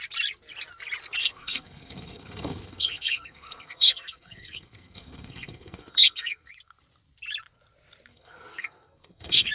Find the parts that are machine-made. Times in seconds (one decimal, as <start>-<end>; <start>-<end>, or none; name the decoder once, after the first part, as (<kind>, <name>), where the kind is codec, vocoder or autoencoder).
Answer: 1.2-6.5 (codec, SNAC); 8.1-9.5